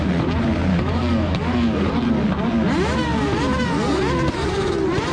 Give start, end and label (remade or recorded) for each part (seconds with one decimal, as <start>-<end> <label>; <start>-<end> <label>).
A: 0.0-0.7 recorded; 0.7-1.9 remade; 1.9-5.1 recorded